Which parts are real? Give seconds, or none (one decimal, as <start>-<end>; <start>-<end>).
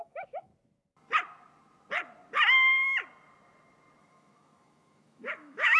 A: 0.5-4.0